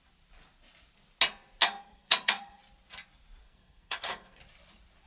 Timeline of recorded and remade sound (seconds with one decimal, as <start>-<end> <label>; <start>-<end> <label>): 0.0-1.6 recorded; 1.6-2.6 remade; 2.6-3.4 recorded; 3.4-4.4 remade; 4.4-5.1 recorded